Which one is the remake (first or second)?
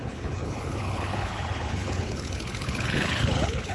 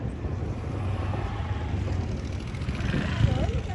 first